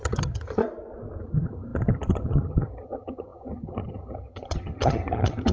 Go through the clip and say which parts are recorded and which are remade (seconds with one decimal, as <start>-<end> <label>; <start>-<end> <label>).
0.0-0.6 remade; 0.6-1.2 recorded; 1.2-5.5 remade